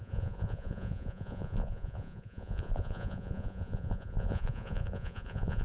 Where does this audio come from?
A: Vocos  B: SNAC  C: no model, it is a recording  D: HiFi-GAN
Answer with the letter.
A